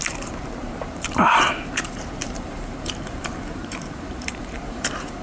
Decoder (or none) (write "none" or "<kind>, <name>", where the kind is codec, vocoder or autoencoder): vocoder, BigVGAN v2